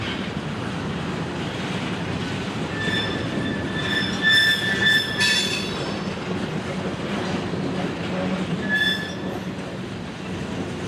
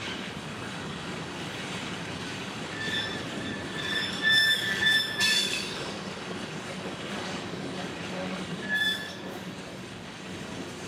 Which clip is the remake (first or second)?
second